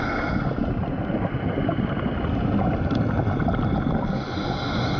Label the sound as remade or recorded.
recorded